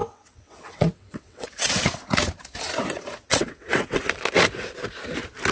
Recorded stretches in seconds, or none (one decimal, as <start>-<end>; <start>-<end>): 1.7-3.3; 4.0-5.5